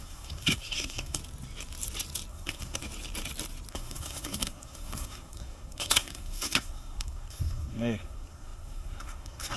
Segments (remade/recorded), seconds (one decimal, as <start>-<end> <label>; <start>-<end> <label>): 0.0-1.2 remade; 1.2-2.3 recorded; 2.3-2.8 remade; 2.8-3.7 recorded; 3.7-9.6 remade